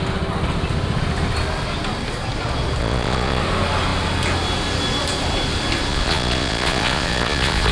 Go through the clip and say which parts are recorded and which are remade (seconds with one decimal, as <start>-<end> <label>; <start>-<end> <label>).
0.0-2.8 recorded; 2.8-3.4 remade; 3.4-5.9 recorded; 5.9-7.7 remade